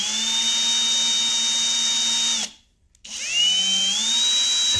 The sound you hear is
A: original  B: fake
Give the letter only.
A